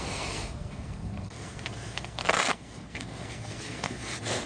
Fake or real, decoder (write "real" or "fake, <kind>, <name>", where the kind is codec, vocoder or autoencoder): fake, codec, SNAC